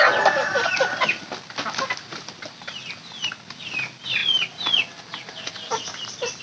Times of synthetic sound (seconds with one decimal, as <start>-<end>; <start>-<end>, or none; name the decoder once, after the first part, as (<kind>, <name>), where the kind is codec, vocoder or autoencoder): none